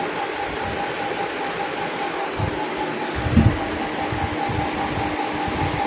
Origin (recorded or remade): recorded